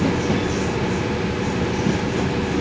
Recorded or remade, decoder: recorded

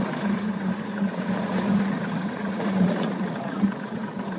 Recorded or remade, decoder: remade, vocoder, Vocos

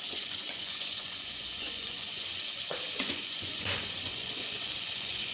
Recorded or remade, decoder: remade, vocoder, Vocos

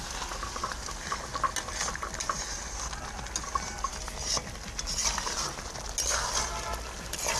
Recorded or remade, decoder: recorded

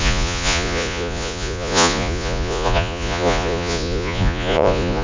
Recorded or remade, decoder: remade, vocoder, Vocos